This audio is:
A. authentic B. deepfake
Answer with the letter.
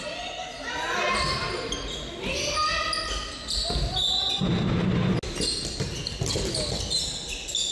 A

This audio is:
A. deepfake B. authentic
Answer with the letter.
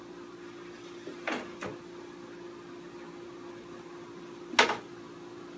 B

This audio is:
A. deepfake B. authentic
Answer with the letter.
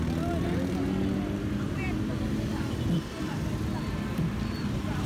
B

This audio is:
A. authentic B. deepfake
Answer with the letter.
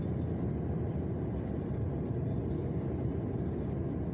A